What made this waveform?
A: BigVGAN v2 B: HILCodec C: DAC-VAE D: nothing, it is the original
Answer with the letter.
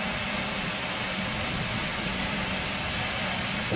D